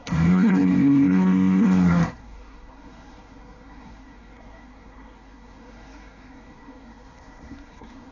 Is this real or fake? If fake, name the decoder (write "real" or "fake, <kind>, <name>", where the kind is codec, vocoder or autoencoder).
fake, codec, SNAC